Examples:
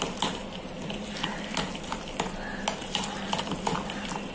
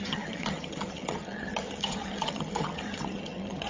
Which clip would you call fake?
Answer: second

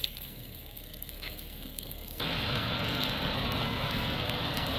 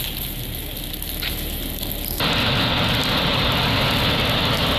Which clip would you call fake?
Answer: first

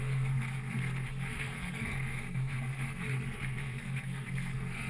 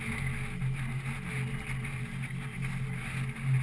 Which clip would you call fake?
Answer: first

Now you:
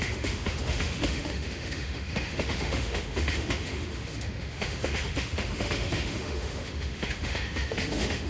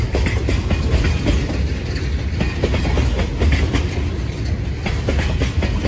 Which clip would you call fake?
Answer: first